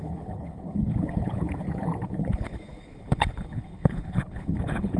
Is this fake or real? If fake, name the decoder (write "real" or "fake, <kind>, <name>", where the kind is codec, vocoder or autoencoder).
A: fake, codec, HILCodec